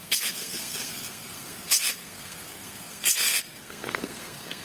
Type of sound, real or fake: fake